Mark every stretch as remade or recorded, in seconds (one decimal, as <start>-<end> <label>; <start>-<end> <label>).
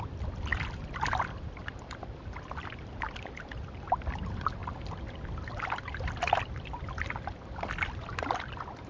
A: 0.0-0.5 recorded; 0.5-2.5 remade; 2.5-4.6 recorded; 4.6-7.0 remade; 7.0-8.9 recorded